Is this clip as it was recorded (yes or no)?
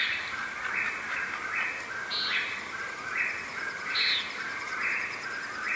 yes